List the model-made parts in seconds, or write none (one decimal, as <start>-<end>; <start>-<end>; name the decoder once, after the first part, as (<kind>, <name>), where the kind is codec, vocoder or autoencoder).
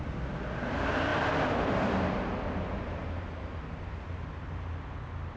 none